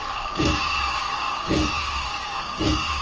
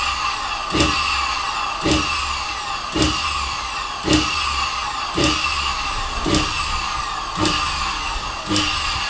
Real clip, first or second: second